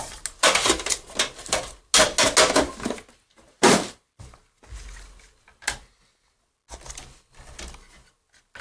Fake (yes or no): no